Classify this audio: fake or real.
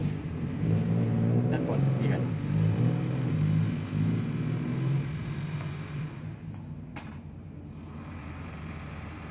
fake